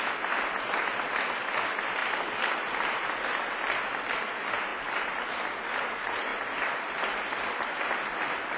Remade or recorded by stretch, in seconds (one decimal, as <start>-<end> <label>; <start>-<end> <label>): 0.0-4.7 recorded; 4.7-5.2 remade; 5.2-6.3 recorded; 6.3-7.6 remade; 7.6-8.6 recorded